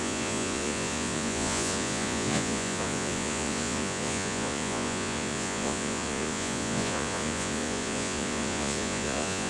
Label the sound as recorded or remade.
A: remade